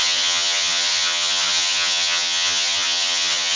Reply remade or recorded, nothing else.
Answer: remade